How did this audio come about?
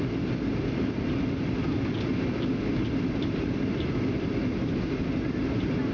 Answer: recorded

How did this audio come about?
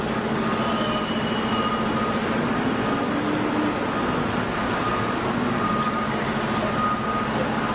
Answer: recorded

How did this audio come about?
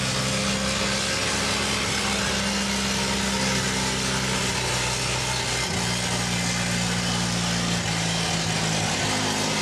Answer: recorded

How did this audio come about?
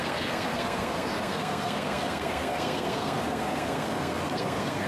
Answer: remade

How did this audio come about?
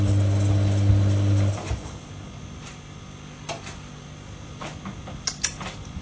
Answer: recorded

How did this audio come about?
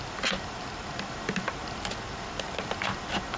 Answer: recorded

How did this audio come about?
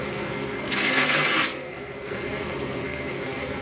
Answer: remade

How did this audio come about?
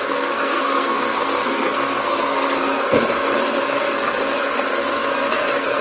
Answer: remade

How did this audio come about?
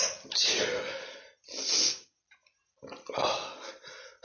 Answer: recorded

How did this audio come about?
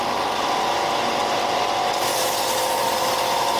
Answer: recorded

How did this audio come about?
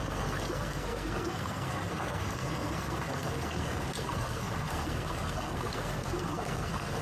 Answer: remade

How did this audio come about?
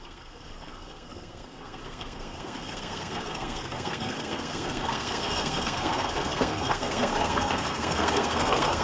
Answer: remade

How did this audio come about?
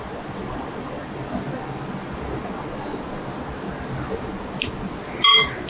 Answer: recorded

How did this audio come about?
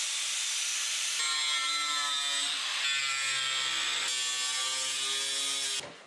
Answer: recorded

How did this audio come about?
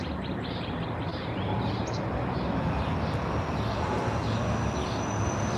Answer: recorded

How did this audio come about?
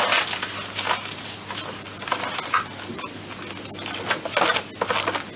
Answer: recorded